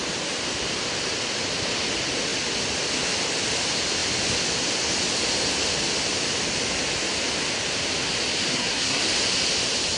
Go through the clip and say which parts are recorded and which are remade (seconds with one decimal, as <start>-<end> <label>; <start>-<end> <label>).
0.0-8.5 recorded; 8.5-9.0 remade; 9.0-10.0 recorded